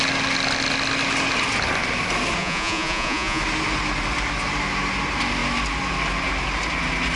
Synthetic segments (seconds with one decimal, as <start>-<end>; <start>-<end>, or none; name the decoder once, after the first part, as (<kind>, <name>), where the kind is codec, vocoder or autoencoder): 2.4-3.4 (vocoder, Vocos)